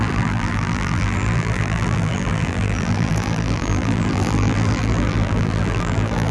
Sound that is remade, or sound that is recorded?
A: remade